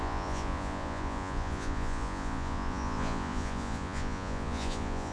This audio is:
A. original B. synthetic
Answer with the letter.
B